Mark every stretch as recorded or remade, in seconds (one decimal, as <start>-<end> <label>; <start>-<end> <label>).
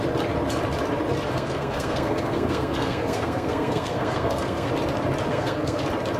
0.0-1.3 recorded; 1.3-4.7 remade; 4.7-5.3 recorded; 5.3-5.8 remade; 5.8-6.2 recorded